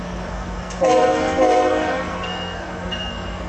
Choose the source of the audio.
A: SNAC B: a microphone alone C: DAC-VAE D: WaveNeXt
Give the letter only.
A